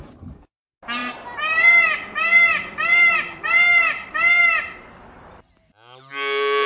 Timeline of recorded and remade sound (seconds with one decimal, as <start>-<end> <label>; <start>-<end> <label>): 0.0-1.0 recorded; 1.0-4.4 remade; 4.4-6.7 recorded